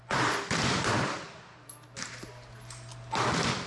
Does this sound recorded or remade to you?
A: recorded